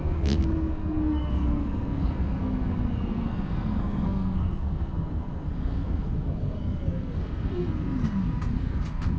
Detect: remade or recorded remade